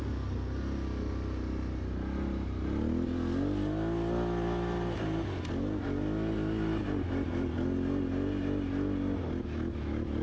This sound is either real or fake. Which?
real